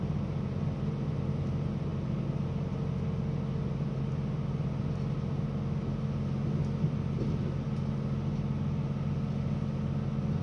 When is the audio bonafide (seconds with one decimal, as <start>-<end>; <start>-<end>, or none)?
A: 0.0-10.4